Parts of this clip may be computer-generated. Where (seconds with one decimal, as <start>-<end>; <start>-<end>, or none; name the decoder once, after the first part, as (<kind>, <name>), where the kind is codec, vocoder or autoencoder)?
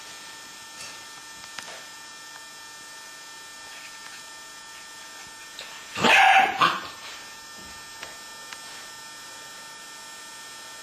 5.4-6.4 (vocoder, BigVGAN v2)